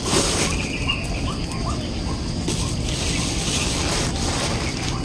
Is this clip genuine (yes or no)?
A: yes